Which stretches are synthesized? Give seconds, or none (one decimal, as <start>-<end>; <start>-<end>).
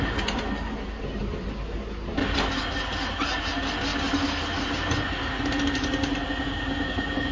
none